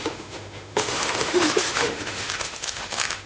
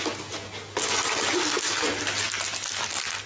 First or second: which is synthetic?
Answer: first